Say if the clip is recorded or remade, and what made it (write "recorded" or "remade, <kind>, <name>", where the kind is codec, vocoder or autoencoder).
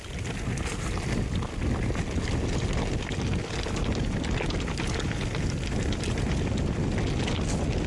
recorded